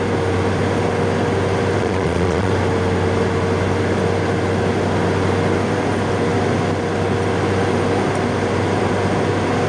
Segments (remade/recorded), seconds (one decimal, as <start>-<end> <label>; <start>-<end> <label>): 0.0-1.8 recorded; 1.8-2.5 remade; 2.5-9.7 recorded